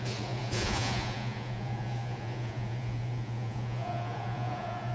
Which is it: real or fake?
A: fake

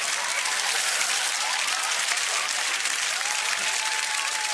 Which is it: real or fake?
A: real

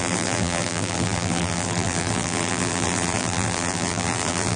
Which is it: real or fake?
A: fake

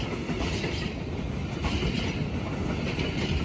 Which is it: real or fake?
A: real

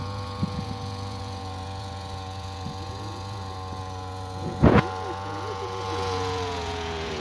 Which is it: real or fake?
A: fake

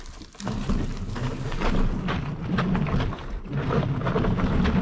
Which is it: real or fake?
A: real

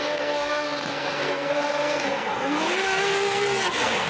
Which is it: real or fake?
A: fake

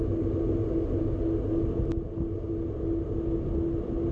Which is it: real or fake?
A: real